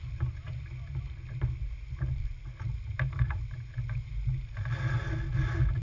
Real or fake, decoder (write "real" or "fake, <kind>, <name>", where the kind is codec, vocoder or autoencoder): real